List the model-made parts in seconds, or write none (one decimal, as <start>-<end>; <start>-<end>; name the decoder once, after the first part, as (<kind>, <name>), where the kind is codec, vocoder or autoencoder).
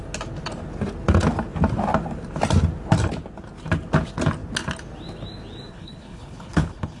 5.7-7.0 (codec, HILCodec)